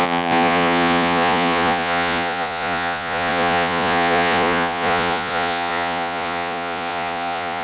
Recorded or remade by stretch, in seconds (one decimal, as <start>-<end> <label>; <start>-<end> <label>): 0.0-7.6 remade